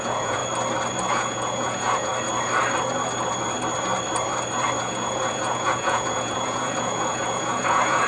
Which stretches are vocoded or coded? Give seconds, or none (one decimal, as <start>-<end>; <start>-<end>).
0.0-0.4; 1.1-2.1; 4.8-8.1